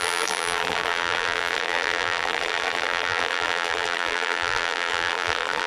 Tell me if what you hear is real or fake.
fake